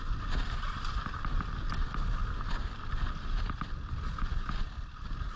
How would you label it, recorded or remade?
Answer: recorded